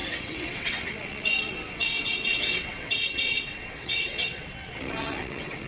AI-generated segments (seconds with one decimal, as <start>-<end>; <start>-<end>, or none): 0.0-5.7